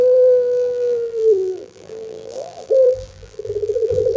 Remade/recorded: remade